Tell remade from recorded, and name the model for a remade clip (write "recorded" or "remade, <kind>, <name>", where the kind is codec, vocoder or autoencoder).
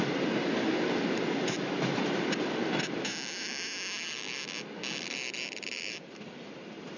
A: recorded